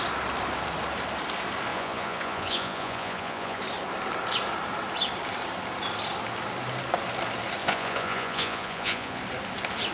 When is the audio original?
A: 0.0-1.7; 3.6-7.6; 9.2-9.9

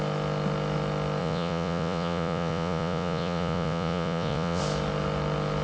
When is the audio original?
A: 0.0-1.2; 4.6-5.6

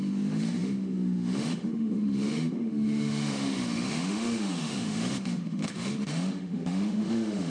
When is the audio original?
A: none